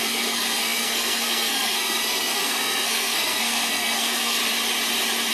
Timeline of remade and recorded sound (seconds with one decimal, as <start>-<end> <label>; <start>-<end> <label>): 0.0-4.4 remade; 4.4-5.3 recorded